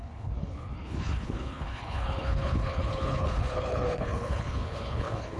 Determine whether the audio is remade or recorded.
remade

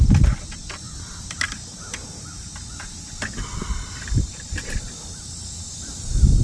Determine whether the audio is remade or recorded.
recorded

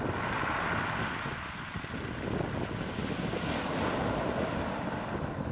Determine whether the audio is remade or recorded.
recorded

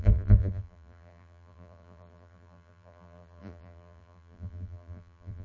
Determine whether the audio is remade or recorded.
remade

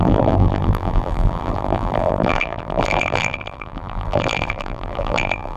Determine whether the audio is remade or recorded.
remade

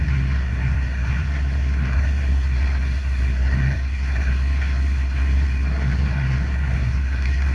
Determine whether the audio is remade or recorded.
remade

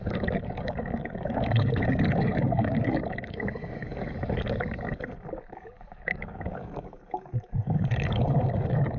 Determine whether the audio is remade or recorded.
remade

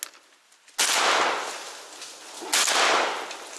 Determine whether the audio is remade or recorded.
recorded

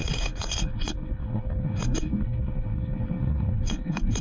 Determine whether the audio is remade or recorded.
remade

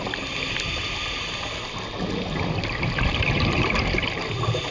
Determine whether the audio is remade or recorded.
recorded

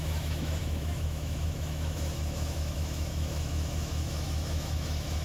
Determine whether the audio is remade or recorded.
remade